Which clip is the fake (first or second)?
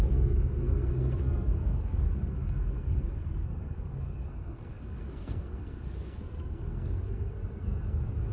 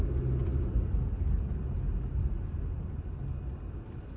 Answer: first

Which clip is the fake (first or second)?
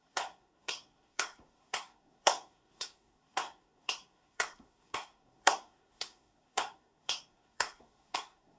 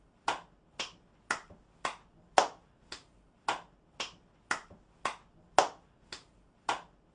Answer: first